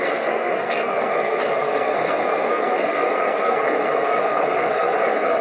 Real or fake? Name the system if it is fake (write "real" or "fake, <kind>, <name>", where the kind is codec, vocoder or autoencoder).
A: fake, codec, SNAC